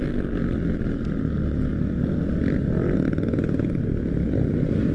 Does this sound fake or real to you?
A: real